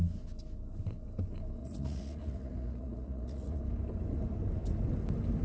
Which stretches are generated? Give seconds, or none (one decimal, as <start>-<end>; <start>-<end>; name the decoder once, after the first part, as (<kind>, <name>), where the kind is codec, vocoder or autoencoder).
1.6-3.6 (vocoder, Vocos)